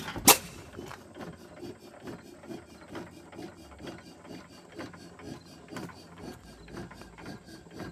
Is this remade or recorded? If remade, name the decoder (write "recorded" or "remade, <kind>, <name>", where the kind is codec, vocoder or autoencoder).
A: recorded